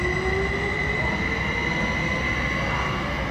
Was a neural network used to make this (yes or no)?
no